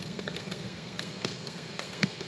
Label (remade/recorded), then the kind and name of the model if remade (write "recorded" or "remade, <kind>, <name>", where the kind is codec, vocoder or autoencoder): remade, codec, SNAC